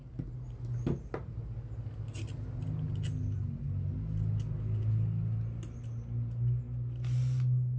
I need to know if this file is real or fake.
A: real